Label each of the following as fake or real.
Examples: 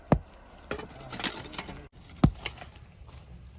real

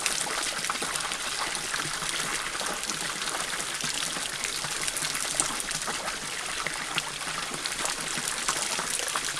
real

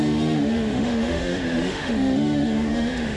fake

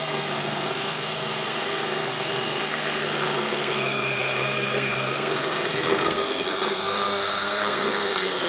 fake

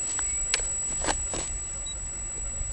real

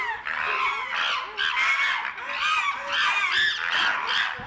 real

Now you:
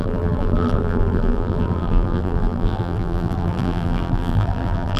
fake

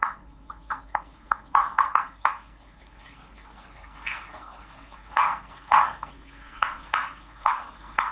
fake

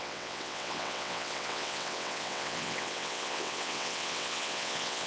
fake